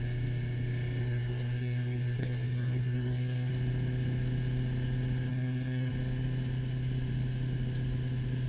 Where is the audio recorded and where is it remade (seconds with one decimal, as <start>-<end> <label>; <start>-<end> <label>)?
0.0-1.0 recorded; 1.0-3.5 remade; 3.5-5.3 recorded; 5.3-5.9 remade; 5.9-8.5 recorded